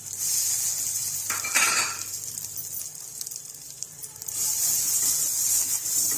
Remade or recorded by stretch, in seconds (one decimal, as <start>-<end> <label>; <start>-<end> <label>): 0.0-6.2 recorded